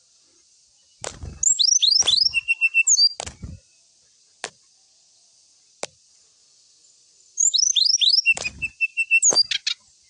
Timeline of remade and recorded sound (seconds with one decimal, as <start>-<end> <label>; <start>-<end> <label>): 0.0-6.4 recorded; 6.4-8.1 remade; 8.1-10.1 recorded